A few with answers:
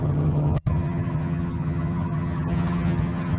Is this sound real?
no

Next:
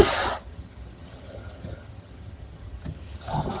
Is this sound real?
no